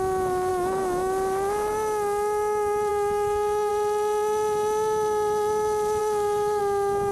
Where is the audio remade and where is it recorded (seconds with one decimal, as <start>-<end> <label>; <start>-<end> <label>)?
0.0-0.5 recorded; 0.5-1.1 remade; 1.1-2.9 recorded; 2.9-3.7 remade; 3.7-6.0 recorded; 6.0-6.6 remade; 6.6-7.1 recorded